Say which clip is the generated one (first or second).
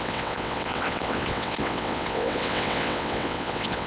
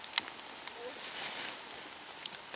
first